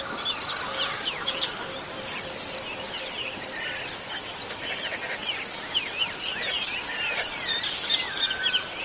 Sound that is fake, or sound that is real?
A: real